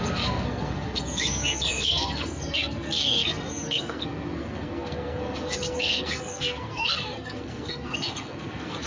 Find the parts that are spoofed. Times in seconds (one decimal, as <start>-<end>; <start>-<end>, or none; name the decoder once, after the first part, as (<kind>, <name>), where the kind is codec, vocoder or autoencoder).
0.0-8.9 (codec, SNAC)